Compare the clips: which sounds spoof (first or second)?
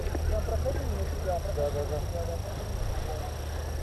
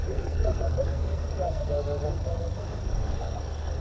second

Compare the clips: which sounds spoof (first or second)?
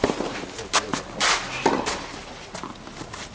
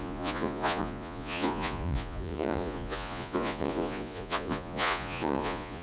second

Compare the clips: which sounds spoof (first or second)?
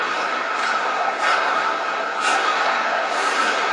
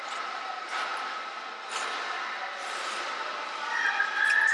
first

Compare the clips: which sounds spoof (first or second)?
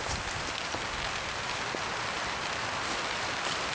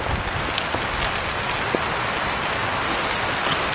first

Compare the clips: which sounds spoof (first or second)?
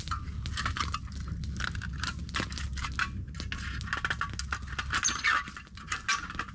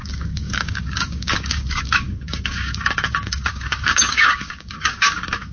second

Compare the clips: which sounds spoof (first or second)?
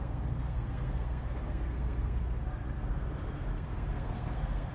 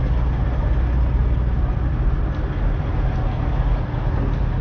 first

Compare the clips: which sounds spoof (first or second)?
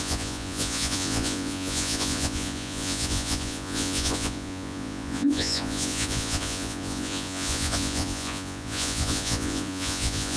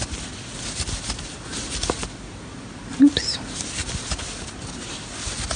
first